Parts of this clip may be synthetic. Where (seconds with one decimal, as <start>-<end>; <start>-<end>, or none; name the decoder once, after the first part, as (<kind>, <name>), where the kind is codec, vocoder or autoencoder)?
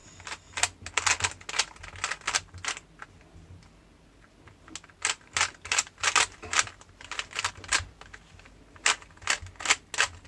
none